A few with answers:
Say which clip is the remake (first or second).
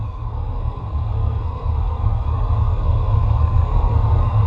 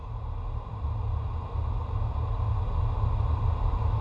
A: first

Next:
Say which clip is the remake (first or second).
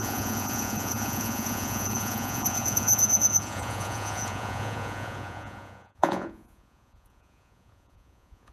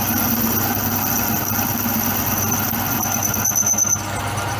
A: first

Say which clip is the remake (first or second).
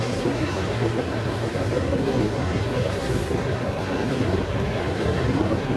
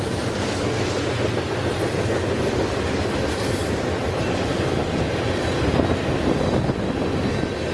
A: first